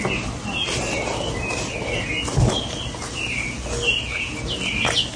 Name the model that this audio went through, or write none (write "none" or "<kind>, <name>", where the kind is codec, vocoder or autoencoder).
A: none